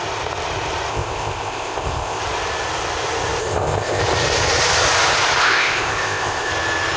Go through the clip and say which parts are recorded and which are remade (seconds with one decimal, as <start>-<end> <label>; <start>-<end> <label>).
0.0-0.9 recorded; 0.9-2.2 remade; 2.2-3.4 recorded; 3.4-4.0 remade; 4.0-5.4 recorded; 5.4-6.5 remade; 6.5-7.0 recorded